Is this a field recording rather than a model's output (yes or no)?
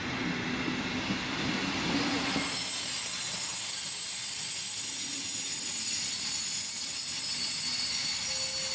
yes